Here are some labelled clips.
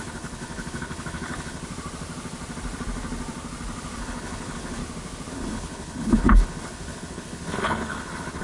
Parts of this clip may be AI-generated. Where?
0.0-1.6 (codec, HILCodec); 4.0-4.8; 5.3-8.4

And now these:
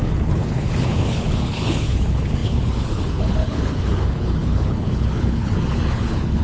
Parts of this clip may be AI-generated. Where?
0.0-6.4 (codec, HILCodec)